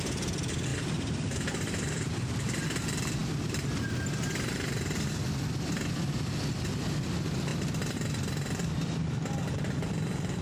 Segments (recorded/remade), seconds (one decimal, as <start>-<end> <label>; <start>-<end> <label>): 0.0-0.7 recorded; 0.7-2.1 remade; 2.1-7.5 recorded; 7.5-9.1 remade; 9.1-10.4 recorded